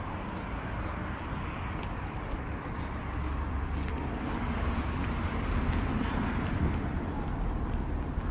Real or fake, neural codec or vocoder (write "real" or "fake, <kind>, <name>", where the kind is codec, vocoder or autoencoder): fake, vocoder, BigVGAN v2